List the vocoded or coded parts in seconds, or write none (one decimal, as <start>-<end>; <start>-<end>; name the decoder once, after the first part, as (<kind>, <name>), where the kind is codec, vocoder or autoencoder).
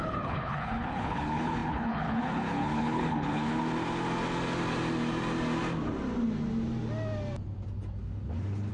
0.0-3.6 (codec, HILCodec)